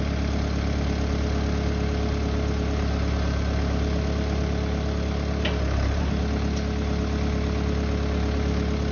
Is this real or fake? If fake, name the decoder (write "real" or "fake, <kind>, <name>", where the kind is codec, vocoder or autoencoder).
real